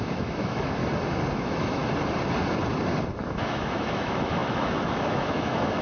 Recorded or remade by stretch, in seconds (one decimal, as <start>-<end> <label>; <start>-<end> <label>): 0.0-0.8 remade; 0.8-1.3 recorded; 1.3-1.8 remade; 1.8-3.2 recorded; 3.2-5.8 remade